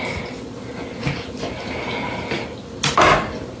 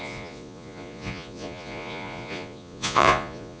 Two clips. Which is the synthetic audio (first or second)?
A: second